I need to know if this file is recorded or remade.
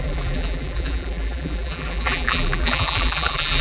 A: remade